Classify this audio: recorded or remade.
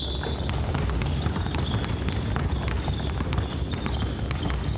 recorded